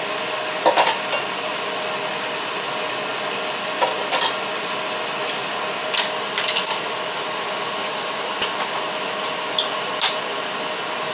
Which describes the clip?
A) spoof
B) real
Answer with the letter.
B